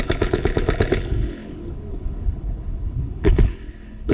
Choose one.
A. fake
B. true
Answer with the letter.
A